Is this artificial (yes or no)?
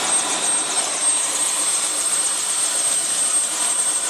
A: yes